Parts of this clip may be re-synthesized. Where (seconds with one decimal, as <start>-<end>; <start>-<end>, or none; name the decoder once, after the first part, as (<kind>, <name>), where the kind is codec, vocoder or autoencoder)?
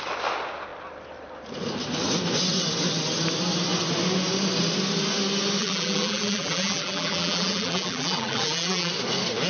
5.6-8.9 (vocoder, BigVGAN v2)